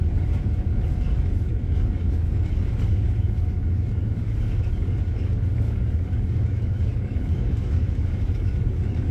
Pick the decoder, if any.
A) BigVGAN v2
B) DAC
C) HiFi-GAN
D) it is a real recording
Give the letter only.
B